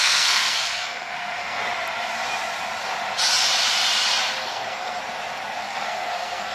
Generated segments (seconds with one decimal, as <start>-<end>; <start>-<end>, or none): 0.0-1.6; 4.4-5.0; 5.6-6.5